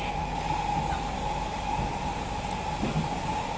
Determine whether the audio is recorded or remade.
recorded